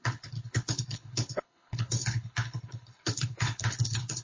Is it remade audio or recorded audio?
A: remade